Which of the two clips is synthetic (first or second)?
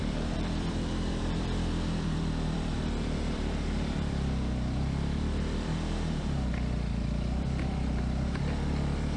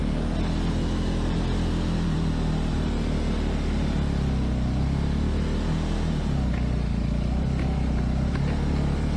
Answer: first